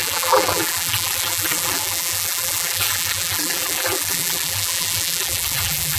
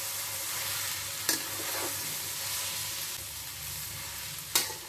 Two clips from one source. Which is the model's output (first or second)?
first